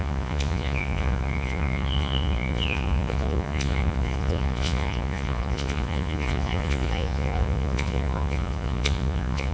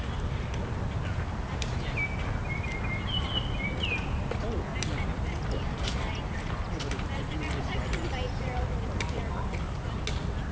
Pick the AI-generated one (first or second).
first